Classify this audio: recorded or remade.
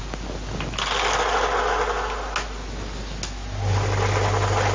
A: recorded